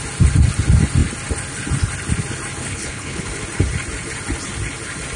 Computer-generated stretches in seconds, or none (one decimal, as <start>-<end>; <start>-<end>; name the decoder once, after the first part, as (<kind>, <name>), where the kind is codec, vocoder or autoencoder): 2.6-3.3 (codec, HILCodec)